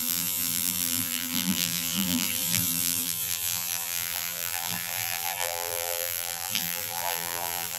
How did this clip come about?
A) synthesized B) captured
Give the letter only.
A